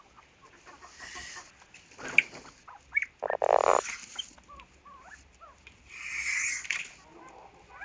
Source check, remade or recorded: recorded